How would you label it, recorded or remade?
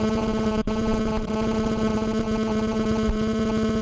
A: remade